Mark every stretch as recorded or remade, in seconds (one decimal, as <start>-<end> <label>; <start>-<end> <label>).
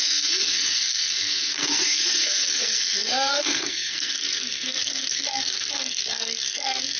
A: 0.0-7.0 remade